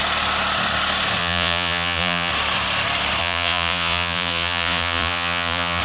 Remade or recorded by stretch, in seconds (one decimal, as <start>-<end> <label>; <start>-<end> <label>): 0.0-1.2 recorded; 1.2-2.3 remade; 2.3-3.2 recorded; 3.2-5.8 remade